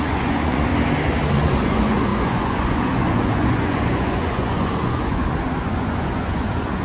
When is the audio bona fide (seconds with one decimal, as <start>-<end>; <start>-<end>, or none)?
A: 0.7-1.3